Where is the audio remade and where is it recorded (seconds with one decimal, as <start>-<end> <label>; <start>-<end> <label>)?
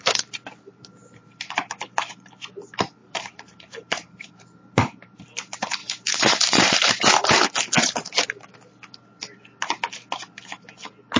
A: 0.0-1.2 recorded; 1.2-2.3 remade; 2.3-3.0 recorded; 3.0-4.4 remade; 4.4-5.8 recorded; 5.8-7.5 remade; 7.5-11.2 recorded